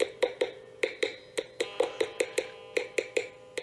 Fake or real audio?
real